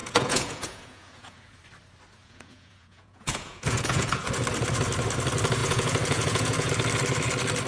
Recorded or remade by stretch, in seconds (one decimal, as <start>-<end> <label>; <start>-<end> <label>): 0.0-1.6 remade; 1.6-2.2 recorded; 2.2-4.3 remade; 4.3-5.6 recorded; 5.6-6.7 remade; 6.7-7.7 recorded